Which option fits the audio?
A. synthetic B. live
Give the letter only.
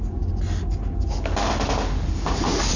B